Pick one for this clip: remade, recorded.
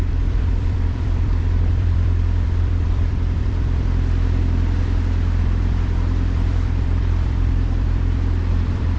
remade